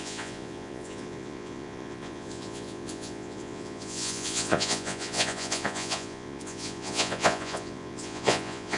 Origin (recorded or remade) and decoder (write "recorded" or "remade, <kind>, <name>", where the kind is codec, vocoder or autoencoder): remade, vocoder, Vocos